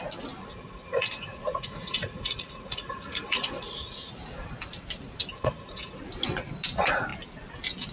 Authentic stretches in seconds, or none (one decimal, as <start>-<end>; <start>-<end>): 0.0-0.4; 4.1-5.3; 6.0-7.9